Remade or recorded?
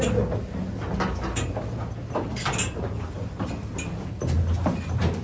recorded